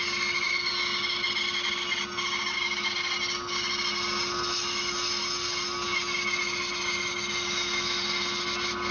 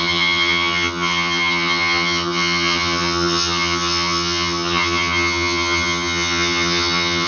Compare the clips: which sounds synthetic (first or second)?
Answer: second